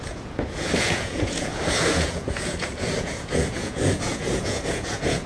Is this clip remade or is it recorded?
remade